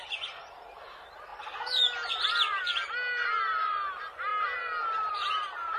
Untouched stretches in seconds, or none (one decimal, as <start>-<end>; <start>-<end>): none